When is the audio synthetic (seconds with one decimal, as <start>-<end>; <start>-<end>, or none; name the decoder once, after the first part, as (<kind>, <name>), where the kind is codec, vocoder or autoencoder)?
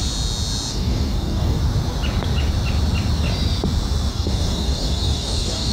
0.7-1.6 (codec, DAC); 4.1-5.7